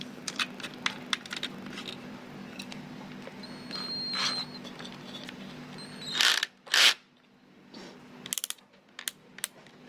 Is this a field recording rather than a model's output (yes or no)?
yes